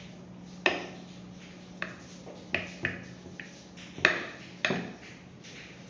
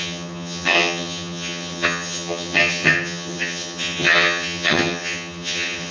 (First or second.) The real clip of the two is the first